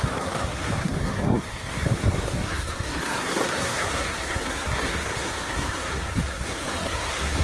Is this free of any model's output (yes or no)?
no